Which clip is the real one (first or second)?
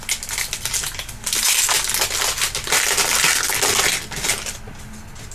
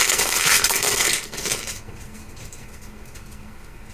first